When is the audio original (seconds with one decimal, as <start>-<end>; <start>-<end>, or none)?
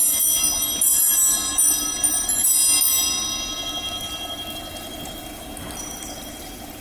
0.0-6.8